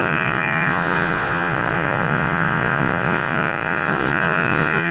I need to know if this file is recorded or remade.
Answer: remade